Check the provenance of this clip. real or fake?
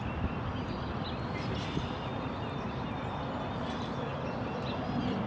real